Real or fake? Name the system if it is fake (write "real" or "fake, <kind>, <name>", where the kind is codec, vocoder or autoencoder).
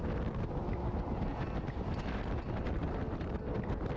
real